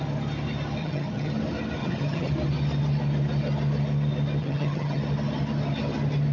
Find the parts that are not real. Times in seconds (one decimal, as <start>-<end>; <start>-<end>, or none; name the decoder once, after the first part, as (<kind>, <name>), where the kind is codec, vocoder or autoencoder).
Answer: 0.8-1.3 (vocoder, HiFi-GAN); 1.8-2.3; 4.4-5.0